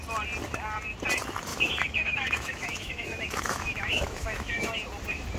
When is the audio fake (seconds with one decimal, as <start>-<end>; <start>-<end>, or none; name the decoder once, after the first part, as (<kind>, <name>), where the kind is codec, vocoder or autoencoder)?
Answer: 1.5-4.7 (autoencoder, DAC-VAE)